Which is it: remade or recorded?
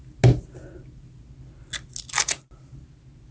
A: recorded